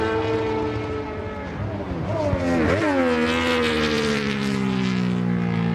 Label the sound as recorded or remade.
recorded